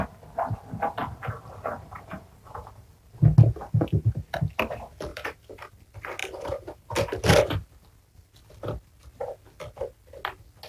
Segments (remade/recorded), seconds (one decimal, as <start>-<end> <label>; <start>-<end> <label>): 0.0-1.0 recorded; 1.0-2.7 remade; 2.7-5.1 recorded; 5.1-5.7 remade; 5.7-6.2 recorded; 6.2-6.9 remade; 6.9-10.7 recorded